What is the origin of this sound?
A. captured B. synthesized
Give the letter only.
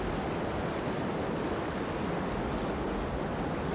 A